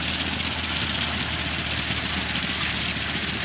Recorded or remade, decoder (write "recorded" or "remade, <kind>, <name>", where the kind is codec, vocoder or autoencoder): recorded